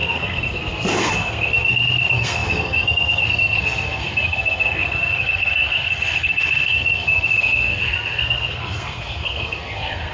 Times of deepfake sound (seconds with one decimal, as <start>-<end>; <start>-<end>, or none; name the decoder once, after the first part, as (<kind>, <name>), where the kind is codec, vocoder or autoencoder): 0.0-10.1 (codec, SNAC)